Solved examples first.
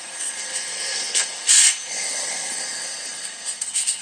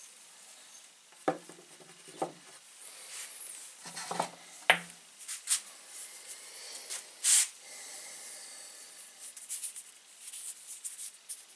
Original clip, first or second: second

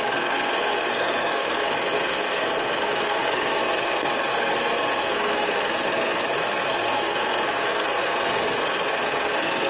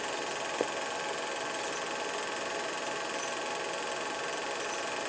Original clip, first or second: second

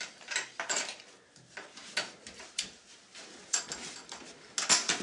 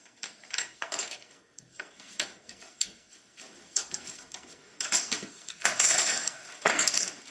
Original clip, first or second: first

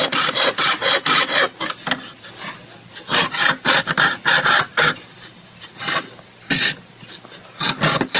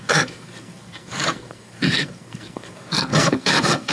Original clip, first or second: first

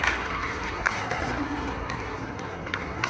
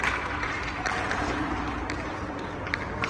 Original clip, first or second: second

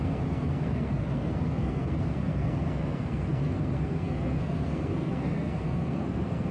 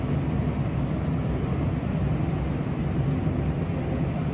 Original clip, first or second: second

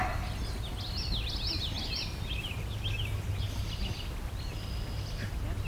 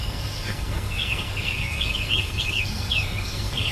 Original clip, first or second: first